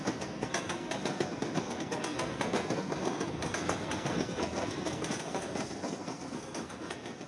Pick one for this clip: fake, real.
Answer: fake